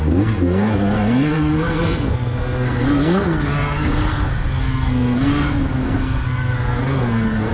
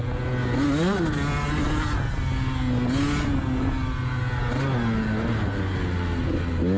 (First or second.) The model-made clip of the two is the first